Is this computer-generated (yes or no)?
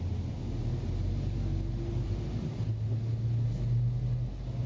no